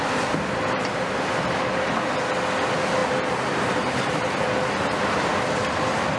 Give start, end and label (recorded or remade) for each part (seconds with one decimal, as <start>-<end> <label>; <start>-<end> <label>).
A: 0.0-3.0 recorded; 3.0-4.4 remade; 4.4-5.3 recorded; 5.3-6.2 remade